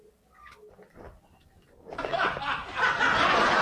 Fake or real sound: real